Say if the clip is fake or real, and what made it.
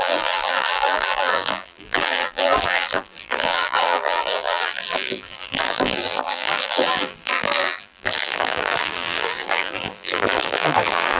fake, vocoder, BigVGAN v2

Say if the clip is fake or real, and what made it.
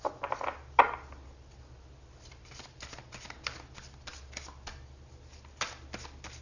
real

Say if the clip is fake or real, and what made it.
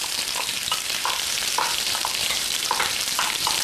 fake, vocoder, BigVGAN v2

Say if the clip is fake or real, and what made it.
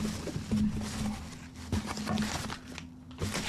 real